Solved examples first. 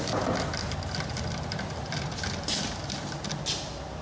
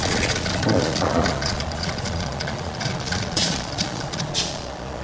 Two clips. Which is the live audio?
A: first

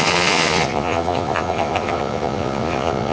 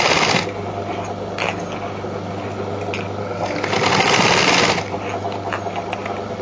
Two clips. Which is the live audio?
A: second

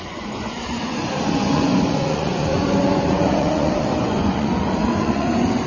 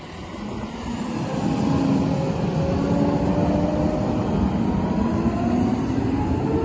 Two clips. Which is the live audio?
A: second